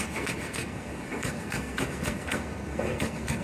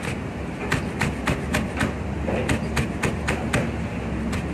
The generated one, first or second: first